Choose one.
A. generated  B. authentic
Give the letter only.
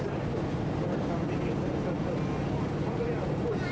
A